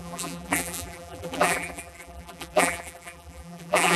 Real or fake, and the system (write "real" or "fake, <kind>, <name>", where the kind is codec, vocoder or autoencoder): fake, vocoder, BigVGAN v2